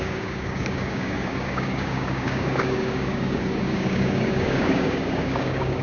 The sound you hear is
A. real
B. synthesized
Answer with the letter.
B